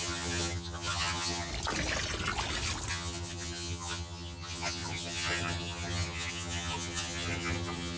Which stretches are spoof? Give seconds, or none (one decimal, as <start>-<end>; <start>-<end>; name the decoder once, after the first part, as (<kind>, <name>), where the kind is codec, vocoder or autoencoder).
0.0-1.5 (vocoder, HiFi-GAN); 2.9-8.0